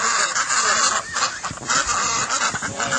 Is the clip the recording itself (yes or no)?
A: yes